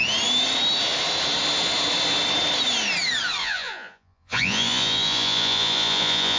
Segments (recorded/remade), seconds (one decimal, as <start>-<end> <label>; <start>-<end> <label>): 0.0-3.4 recorded; 3.4-6.4 remade